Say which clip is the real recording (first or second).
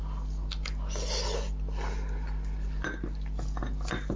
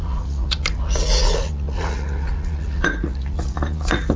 first